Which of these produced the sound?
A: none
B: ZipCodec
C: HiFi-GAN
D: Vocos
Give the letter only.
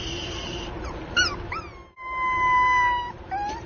A